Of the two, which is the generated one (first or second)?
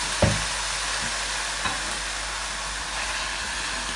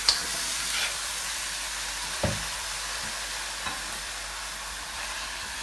second